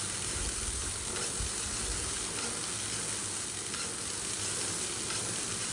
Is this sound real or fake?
real